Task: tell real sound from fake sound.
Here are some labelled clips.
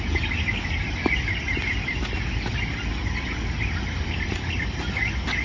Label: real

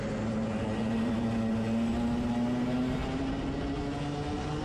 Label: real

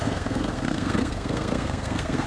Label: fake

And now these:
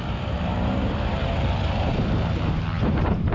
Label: fake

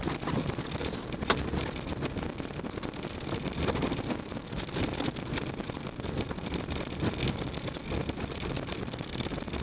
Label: real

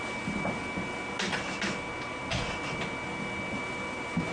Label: real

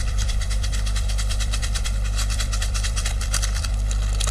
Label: fake